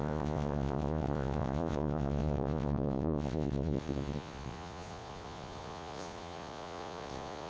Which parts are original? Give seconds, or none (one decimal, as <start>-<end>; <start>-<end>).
none